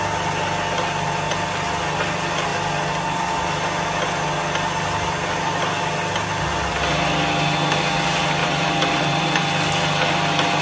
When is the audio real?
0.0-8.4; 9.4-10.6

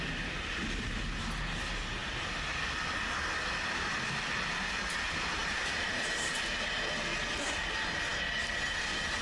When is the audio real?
0.0-5.4; 6.3-9.2

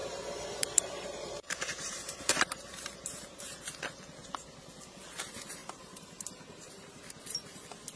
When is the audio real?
3.6-5.6; 6.9-8.0